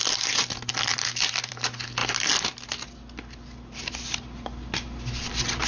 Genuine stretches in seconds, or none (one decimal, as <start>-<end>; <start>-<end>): 0.0-5.7